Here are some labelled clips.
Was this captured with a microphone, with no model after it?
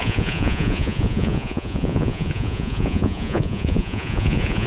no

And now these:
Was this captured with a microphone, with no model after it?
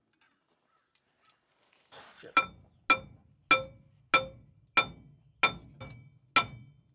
yes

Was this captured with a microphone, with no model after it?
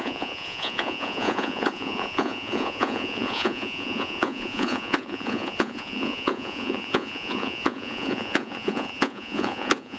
no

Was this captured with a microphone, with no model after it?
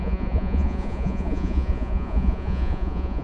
no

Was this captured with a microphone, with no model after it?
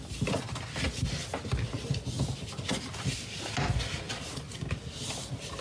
yes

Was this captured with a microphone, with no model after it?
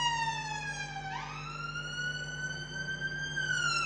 yes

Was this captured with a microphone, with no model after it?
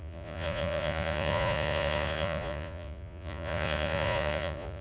no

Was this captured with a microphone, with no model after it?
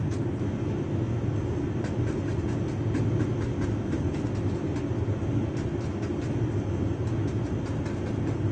yes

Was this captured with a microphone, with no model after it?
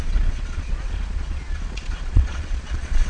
no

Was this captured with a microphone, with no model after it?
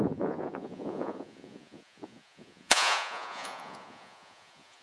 no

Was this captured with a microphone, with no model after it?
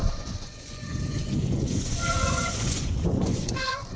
no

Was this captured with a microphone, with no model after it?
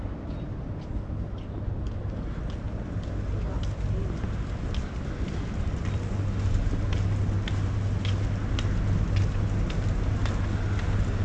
yes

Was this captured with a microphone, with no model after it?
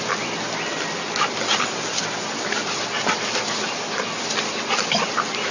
yes